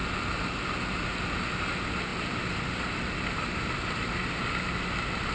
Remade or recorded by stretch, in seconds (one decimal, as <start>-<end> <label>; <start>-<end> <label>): 0.0-5.3 recorded